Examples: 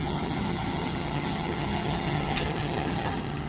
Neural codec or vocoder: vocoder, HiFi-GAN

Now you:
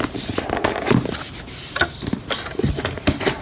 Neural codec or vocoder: none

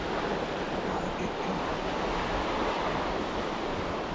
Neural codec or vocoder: none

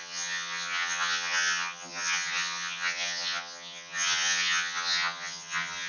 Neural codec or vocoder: vocoder, HiFi-GAN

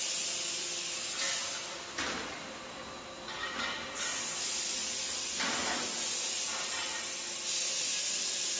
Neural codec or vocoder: none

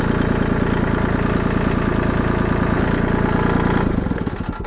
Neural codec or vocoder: none